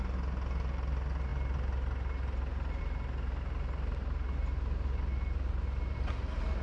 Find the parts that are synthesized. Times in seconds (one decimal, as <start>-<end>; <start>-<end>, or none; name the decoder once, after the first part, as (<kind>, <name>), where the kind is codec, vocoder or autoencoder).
none